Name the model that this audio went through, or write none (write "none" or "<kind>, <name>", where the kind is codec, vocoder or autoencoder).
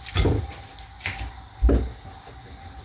none